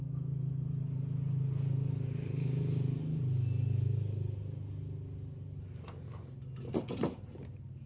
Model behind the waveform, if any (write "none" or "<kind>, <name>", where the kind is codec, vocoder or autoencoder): none